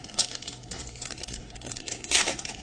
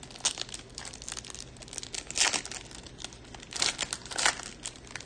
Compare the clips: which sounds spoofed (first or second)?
first